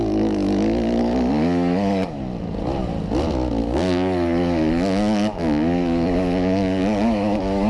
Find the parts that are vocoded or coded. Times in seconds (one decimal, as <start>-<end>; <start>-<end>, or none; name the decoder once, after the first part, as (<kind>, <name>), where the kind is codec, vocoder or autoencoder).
0.0-2.2 (codec, DAC); 3.6-7.7